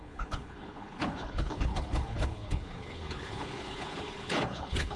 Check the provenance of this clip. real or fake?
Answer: fake